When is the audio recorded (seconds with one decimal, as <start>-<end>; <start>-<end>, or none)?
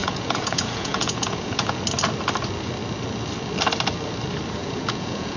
1.8-4.6